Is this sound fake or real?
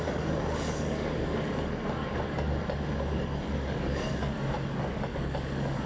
fake